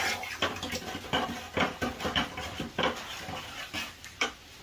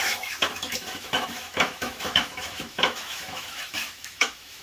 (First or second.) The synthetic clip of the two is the second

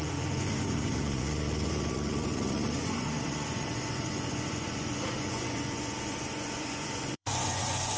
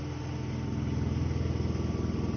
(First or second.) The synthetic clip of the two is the first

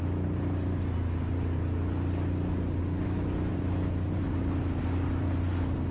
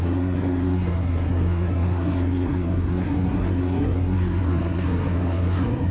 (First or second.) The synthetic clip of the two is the second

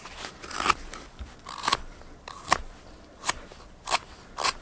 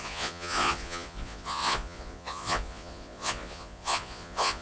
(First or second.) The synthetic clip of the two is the second